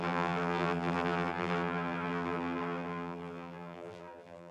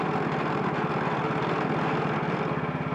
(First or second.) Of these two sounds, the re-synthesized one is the first